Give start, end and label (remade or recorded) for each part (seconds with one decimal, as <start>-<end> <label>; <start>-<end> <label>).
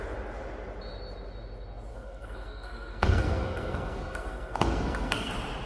0.0-1.9 recorded; 1.9-5.3 remade; 5.3-5.7 recorded